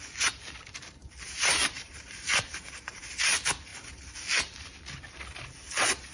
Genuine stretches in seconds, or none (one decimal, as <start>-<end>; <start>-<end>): 0.0-1.0; 3.2-6.1